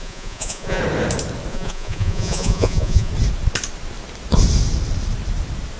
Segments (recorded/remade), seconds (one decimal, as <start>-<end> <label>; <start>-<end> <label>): 0.0-0.8 remade; 0.8-1.5 recorded; 1.5-3.1 remade; 3.1-5.8 recorded